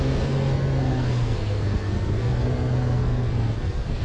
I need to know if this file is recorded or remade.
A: remade